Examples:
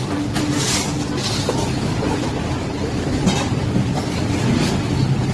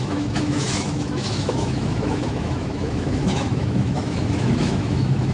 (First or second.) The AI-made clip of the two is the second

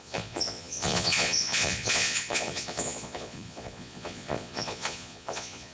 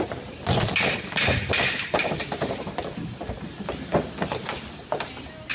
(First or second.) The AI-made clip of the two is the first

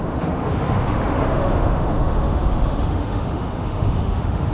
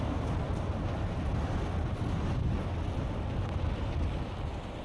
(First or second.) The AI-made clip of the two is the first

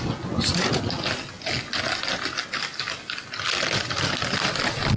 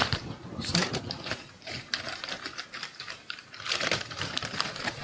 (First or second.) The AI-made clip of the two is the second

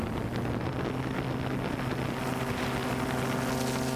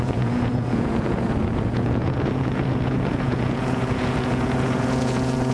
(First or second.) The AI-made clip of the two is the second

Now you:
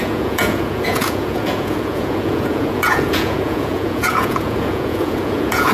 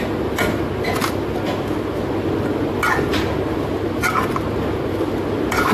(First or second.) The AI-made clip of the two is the first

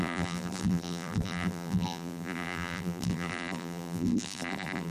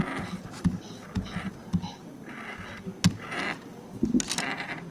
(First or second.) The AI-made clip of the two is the first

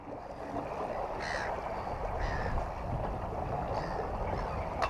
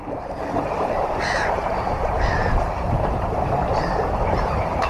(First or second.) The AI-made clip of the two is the second